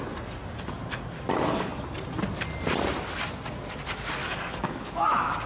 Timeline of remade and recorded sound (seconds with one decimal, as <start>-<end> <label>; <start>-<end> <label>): 0.0-4.2 recorded; 4.2-5.0 remade; 5.0-5.5 recorded